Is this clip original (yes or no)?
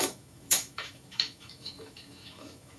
no